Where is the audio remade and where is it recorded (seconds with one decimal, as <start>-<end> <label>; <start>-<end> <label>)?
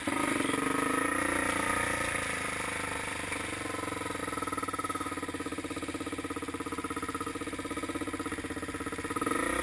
0.0-9.6 recorded